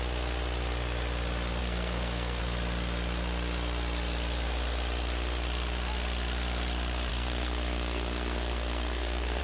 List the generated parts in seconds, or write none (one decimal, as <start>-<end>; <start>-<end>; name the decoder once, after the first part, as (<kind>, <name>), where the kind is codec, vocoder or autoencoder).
1.6-2.4 (codec, SNAC); 7.1-9.4